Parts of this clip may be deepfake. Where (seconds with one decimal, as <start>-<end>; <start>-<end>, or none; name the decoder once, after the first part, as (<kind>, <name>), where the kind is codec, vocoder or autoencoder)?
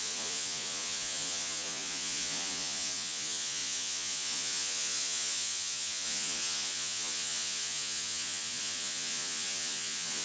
0.0-10.2 (vocoder, Vocos)